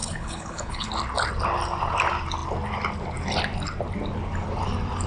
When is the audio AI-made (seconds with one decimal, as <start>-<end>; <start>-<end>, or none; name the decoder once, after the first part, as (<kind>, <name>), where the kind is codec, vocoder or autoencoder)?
0.0-0.9 (codec, HILCodec)